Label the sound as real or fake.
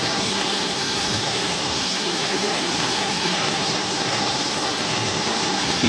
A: fake